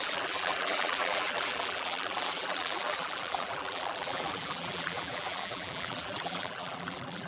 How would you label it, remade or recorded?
remade